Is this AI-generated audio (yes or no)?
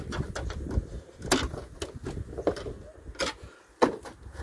no